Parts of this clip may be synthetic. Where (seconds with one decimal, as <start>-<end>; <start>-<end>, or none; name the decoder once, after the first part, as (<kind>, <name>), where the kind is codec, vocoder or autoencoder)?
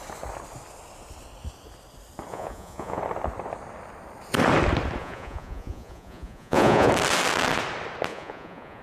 2.3-3.0 (vocoder, Vocos); 5.0-6.9; 8.1-8.8